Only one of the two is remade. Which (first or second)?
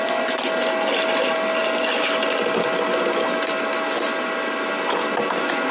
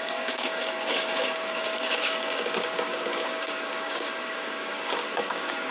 second